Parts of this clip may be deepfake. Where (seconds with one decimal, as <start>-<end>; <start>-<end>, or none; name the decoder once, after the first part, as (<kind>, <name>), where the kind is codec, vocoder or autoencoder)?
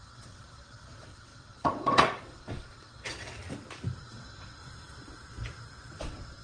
0.0-3.4 (vocoder, WaveNeXt); 4.0-4.6; 6.0-6.4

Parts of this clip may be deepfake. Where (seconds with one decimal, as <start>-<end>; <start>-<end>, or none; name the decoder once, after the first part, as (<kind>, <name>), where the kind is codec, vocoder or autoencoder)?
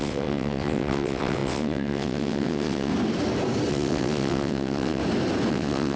0.0-2.9 (vocoder, WaveNeXt); 3.7-5.0; 5.5-6.0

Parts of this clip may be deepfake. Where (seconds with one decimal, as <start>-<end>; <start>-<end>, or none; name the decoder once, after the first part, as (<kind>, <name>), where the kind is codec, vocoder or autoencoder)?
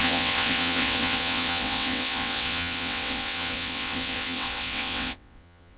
0.0-5.8 (vocoder, WaveNeXt)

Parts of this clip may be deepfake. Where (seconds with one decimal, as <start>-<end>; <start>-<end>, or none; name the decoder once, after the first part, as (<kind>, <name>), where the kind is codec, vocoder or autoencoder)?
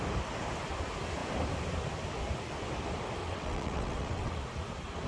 3.2-4.4 (vocoder, WaveNeXt)